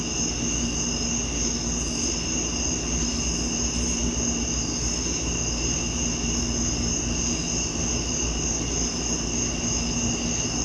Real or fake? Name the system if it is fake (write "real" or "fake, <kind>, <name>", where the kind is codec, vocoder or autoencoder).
real